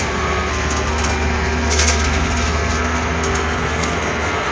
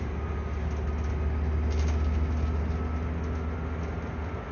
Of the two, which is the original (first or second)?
second